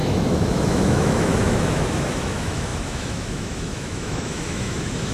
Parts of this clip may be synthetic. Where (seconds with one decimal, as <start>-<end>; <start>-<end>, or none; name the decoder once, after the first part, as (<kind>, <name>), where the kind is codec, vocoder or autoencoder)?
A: 0.0-5.1 (autoencoder, DAC-VAE)